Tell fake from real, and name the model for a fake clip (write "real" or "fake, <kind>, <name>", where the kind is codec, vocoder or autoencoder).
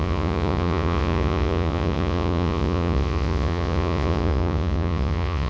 fake, vocoder, Vocos